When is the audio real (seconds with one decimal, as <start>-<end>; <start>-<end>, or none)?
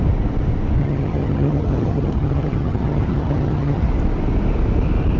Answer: 0.0-0.8; 3.9-5.2